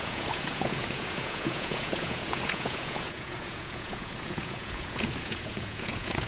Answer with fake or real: fake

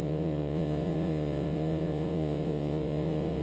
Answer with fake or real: fake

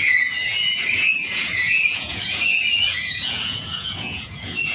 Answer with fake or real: fake